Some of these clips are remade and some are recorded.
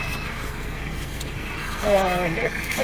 remade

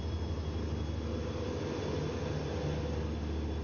recorded